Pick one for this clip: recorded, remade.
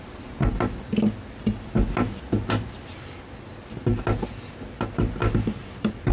recorded